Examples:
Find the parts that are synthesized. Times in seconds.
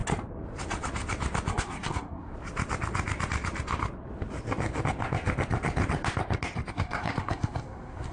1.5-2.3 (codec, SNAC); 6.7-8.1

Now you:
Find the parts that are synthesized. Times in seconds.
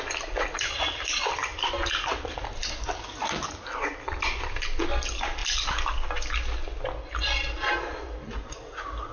none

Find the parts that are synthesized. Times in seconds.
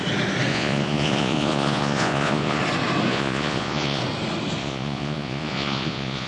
0.5-2.6 (vocoder, Vocos); 3.1-4.0; 4.6-6.3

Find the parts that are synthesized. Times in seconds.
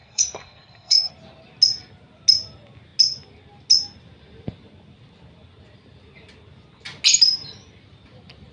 0.0-1.1 (codec, SNAC)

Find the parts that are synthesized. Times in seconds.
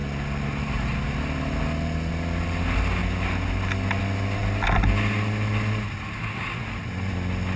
none